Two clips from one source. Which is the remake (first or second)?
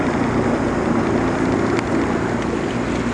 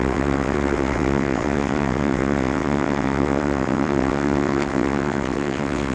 second